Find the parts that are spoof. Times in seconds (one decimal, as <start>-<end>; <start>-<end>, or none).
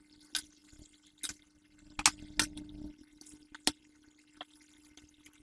none